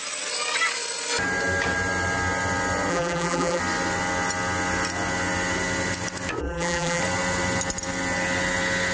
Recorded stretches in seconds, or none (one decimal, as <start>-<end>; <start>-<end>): 0.0-2.9; 3.6-6.4; 7.0-8.9